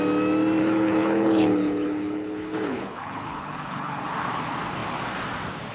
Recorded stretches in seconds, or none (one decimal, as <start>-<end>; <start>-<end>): 0.0-0.6; 4.0-5.7